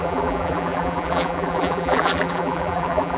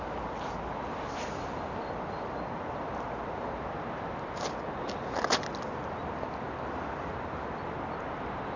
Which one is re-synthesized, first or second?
first